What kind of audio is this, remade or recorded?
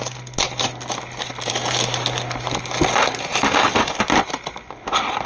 recorded